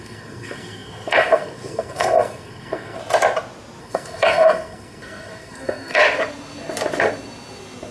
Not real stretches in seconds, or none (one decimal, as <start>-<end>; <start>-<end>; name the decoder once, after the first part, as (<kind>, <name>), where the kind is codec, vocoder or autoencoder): 0.0-3.0 (codec, SNAC); 3.8-6.0